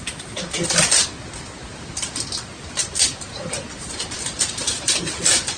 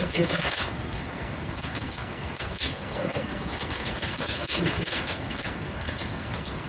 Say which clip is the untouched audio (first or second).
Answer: first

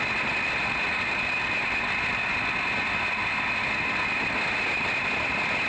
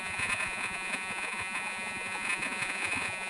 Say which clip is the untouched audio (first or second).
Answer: first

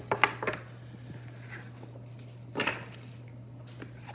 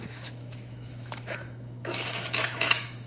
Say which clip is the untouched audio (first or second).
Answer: first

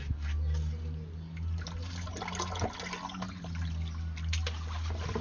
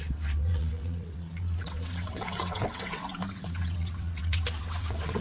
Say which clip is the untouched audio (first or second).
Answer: first